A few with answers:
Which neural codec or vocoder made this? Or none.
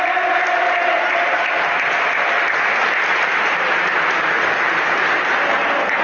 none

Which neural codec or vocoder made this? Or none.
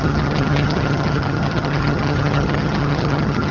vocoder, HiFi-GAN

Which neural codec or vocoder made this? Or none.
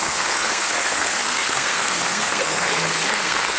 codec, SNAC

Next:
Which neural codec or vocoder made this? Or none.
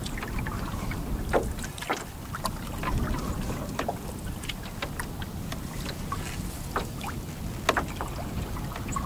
none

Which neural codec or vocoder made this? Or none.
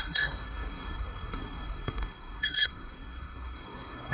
codec, SNAC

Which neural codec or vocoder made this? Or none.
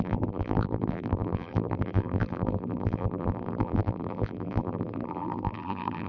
vocoder, BigVGAN v2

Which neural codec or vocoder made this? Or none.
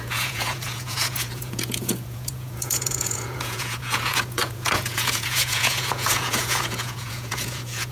vocoder, Vocos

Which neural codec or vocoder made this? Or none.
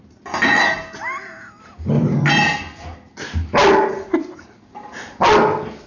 none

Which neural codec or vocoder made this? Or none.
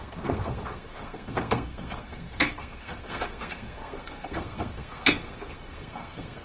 codec, SNAC